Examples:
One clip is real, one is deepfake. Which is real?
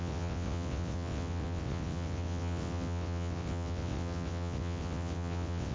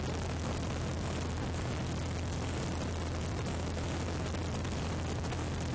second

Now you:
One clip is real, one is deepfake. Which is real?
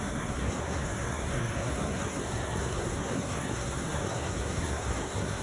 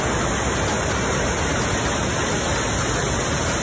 second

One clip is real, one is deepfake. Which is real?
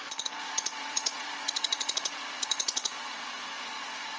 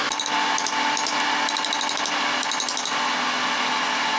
second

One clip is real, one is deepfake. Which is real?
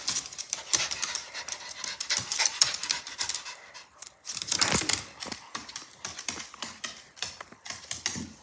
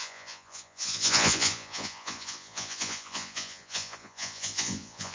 first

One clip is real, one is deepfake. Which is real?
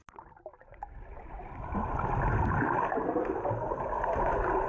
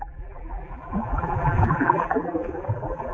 first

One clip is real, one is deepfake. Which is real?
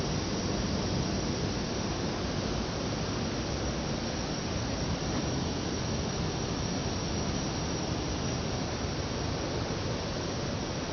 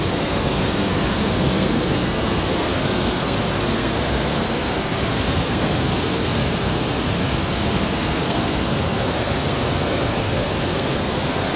first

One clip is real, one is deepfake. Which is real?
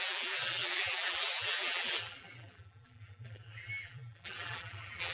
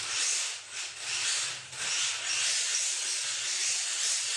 second